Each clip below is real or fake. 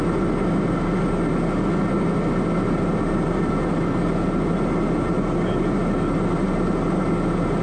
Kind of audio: real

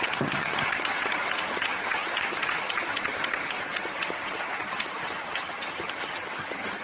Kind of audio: fake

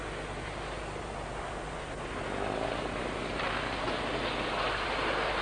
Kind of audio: real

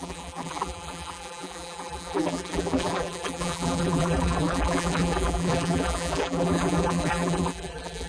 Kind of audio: fake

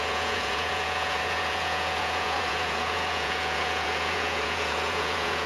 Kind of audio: fake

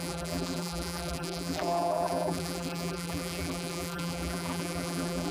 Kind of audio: fake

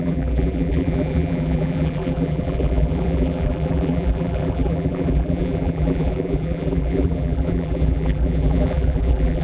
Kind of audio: fake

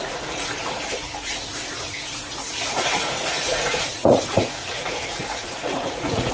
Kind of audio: fake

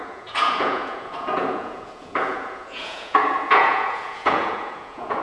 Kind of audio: fake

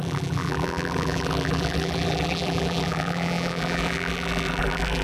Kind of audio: fake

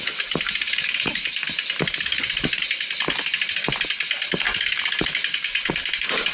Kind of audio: real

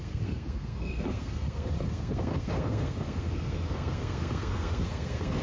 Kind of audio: fake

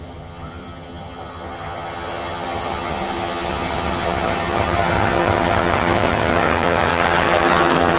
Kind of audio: fake